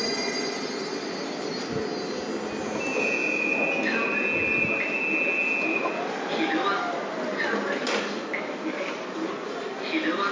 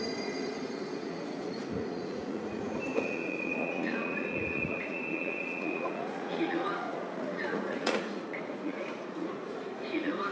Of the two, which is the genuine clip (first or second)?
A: first